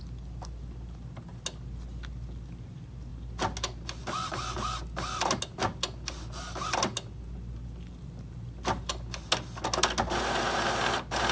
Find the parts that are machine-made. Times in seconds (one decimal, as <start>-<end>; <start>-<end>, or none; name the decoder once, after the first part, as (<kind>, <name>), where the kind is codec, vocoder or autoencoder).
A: none